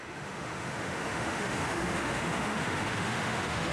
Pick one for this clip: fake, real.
fake